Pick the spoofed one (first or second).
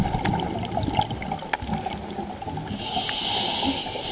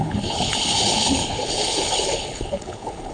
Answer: second